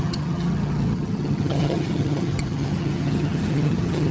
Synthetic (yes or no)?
yes